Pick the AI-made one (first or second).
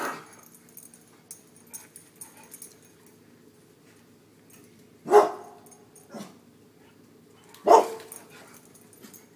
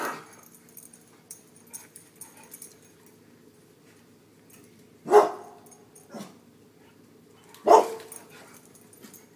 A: second